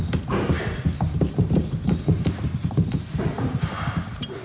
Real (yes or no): no